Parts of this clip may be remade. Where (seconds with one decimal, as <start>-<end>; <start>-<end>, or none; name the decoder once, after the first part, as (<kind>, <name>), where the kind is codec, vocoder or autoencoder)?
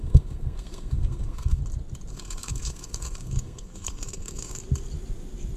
0.0-1.6 (codec, SNAC); 2.1-4.6